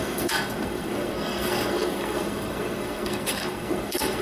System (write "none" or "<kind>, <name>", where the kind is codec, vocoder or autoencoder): codec, SNAC